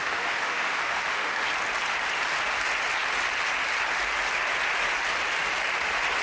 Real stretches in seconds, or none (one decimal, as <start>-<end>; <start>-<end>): 1.4-6.2